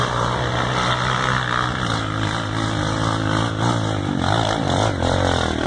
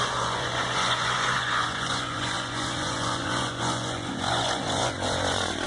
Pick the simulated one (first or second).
second